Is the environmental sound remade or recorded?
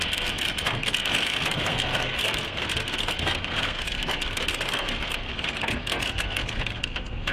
remade